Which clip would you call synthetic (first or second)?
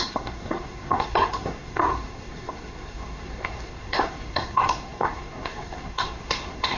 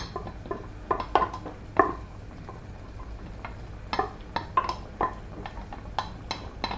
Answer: first